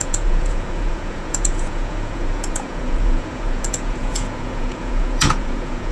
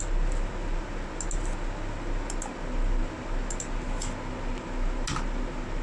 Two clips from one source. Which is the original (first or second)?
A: second